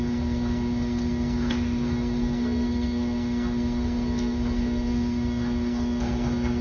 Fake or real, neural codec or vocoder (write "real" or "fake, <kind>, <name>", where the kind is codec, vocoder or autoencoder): fake, codec, SNAC